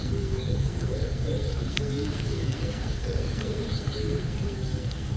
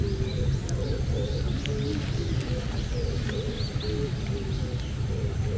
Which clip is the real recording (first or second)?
second